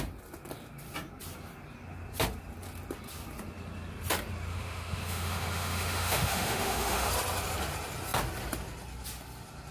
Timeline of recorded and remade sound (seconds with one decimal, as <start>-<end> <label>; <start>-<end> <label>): 0.0-4.5 recorded; 4.5-7.1 remade; 7.1-9.7 recorded